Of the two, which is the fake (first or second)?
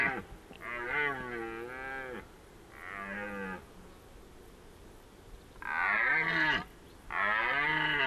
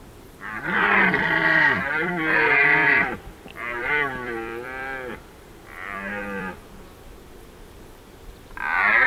second